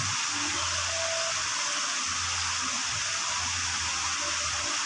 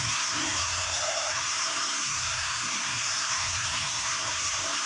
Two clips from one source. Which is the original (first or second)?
first